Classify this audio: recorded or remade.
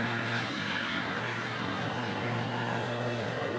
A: remade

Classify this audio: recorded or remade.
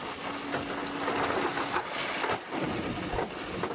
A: recorded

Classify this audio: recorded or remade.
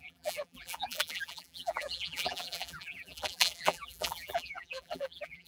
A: remade